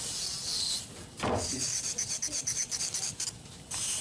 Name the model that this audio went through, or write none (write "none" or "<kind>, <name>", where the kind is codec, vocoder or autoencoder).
vocoder, BigVGAN v2